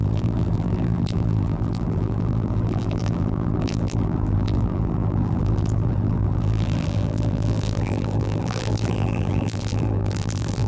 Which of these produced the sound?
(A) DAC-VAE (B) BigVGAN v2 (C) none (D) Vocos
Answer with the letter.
B